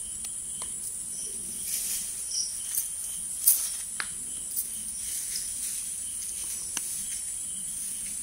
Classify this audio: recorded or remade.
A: recorded